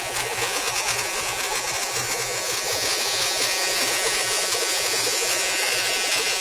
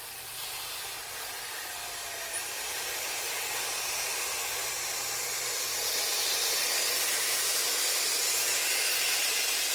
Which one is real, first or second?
second